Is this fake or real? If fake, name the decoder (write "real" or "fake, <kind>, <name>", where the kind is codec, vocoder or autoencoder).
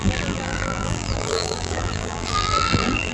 fake, vocoder, BigVGAN v2